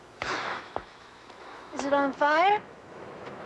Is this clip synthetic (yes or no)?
yes